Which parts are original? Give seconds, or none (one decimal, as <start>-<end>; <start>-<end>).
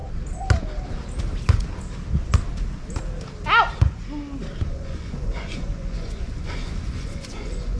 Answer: 0.0-4.7